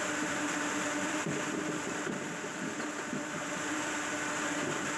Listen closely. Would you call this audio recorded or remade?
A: remade